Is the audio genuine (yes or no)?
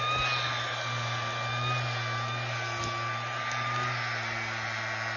yes